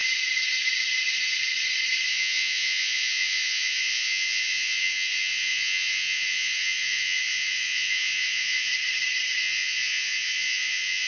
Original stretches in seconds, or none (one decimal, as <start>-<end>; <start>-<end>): 0.0-2.1; 8.7-9.4